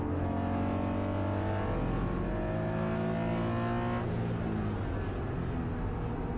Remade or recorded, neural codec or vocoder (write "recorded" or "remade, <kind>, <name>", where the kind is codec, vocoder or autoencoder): recorded